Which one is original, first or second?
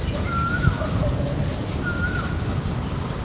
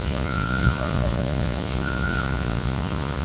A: first